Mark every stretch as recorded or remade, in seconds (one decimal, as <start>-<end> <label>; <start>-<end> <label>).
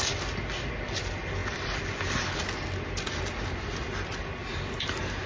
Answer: 0.0-5.3 recorded